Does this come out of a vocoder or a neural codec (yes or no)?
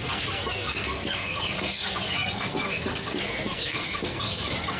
yes